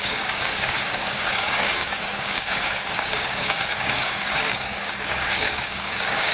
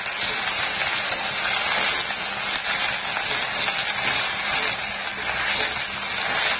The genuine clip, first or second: second